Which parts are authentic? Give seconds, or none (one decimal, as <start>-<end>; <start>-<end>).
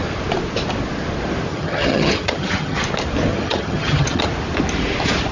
0.0-1.5; 2.8-3.3; 4.2-5.3